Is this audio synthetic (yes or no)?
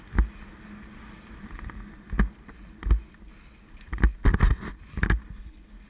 no